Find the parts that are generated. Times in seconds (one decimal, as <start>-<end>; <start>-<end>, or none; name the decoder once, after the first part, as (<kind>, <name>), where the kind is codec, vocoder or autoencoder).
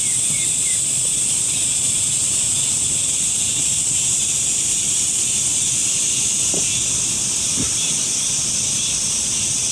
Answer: none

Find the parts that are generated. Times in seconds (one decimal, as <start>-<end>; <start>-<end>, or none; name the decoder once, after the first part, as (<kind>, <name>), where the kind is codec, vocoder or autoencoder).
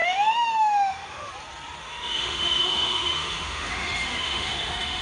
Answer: 0.0-1.3 (autoencoder, DAC-VAE); 1.8-5.0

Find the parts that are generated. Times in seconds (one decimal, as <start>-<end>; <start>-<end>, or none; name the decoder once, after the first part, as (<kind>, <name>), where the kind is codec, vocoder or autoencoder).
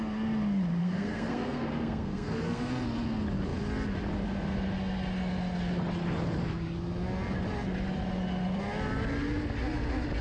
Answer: 0.8-2.7 (codec, SNAC)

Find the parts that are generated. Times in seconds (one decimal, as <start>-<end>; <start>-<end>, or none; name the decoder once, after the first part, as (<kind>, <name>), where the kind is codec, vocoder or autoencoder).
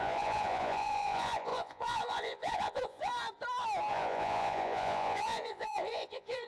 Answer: 0.0-3.1 (vocoder, Vocos); 3.9-6.5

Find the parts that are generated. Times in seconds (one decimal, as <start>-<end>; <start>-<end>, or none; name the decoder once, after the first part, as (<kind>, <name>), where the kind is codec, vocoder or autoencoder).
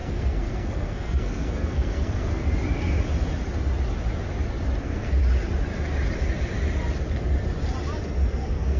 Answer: 0.0-2.4 (codec, SNAC); 4.8-5.2; 8.3-8.8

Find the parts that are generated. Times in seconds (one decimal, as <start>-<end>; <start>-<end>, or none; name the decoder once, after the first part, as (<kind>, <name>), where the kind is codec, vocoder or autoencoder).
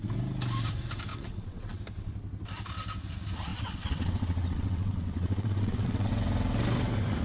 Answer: 1.1-1.8 (vocoder, WaveNeXt); 3.5-6.1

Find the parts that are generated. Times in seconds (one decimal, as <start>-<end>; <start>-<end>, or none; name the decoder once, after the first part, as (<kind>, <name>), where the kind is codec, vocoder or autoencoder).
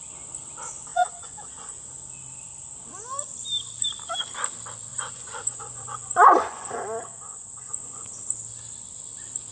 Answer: 0.9-1.9 (vocoder, Vocos); 4.9-8.2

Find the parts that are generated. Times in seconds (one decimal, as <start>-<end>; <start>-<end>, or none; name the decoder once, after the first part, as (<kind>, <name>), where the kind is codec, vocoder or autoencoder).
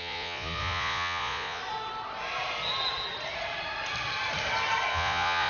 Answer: 0.0-1.6 (vocoder, Vocos); 4.9-5.5